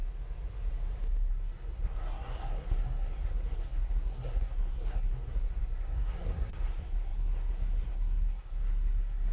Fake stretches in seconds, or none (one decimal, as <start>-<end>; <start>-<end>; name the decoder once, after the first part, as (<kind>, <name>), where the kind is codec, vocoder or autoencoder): 1.3-9.3 (codec, SNAC)